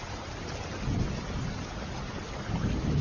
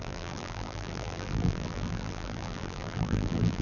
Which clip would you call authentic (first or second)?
first